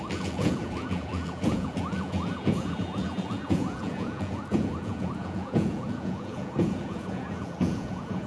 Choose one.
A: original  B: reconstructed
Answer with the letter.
B